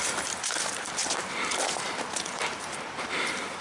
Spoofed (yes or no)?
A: yes